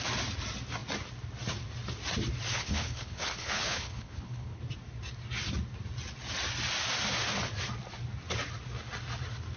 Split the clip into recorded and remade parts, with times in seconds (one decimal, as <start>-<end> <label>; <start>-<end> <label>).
0.0-2.5 recorded; 2.5-4.6 remade; 4.6-9.6 recorded